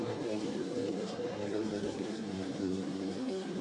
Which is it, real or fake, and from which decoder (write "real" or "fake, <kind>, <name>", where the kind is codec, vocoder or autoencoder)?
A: fake, codec, SNAC